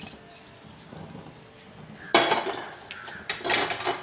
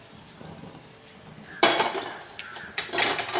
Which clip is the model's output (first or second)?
second